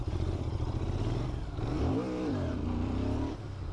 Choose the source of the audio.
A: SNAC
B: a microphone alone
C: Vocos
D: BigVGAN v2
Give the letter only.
D